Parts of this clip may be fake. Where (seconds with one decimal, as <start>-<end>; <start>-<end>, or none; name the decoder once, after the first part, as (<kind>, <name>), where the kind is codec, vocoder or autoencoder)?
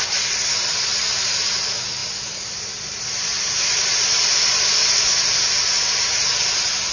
0.0-6.9 (vocoder, BigVGAN v2)